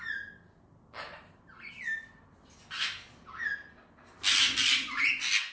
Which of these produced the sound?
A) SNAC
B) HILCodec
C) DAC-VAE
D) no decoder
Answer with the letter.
D